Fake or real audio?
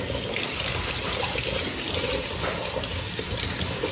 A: real